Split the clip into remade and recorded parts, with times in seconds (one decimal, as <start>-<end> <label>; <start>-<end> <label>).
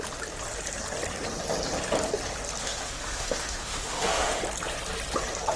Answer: 0.0-2.6 recorded; 2.6-4.4 remade; 4.4-5.6 recorded